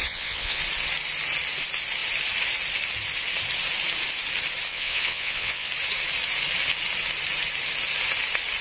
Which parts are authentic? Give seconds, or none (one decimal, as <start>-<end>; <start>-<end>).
0.6-4.7; 5.7-8.6